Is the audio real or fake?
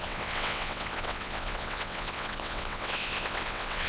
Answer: fake